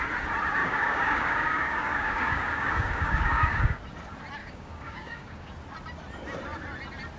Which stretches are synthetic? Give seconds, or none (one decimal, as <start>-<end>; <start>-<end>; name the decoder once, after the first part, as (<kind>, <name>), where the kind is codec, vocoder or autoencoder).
0.6-3.8 (codec, DAC); 4.4-5.5